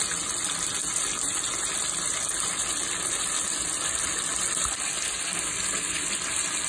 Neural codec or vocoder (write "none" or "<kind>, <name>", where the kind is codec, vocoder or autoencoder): none